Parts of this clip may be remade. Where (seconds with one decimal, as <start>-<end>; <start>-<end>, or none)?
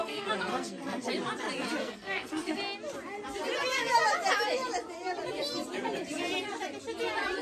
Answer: 0.0-1.1; 1.8-2.6